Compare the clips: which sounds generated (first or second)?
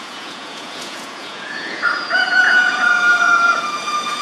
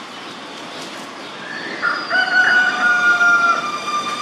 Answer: first